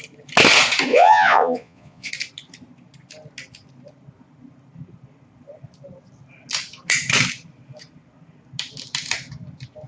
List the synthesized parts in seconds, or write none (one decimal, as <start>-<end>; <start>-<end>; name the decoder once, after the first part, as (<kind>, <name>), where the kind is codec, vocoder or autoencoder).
0.9-2.1 (vocoder, Vocos)